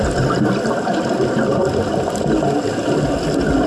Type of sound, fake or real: real